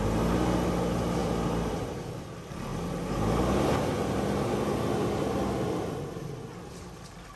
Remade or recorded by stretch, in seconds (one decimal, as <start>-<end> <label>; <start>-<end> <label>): 0.0-7.4 recorded